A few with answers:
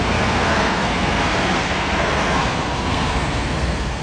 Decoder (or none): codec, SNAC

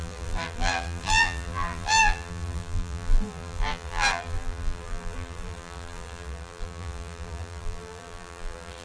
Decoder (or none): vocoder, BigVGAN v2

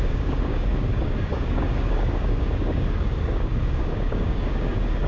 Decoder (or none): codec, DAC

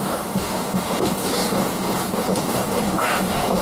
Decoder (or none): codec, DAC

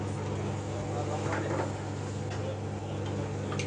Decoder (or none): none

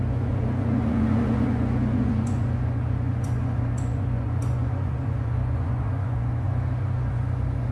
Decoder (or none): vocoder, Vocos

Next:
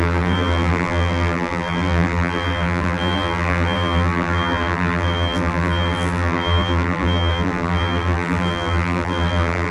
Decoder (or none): vocoder, BigVGAN v2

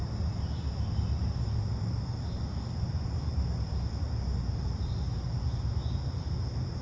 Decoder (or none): none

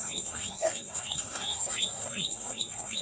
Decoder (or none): codec, SNAC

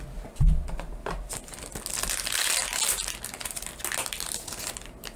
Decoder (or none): none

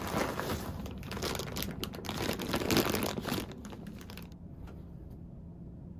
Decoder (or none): none